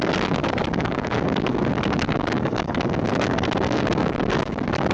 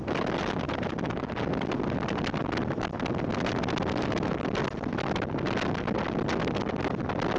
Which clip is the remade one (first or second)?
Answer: first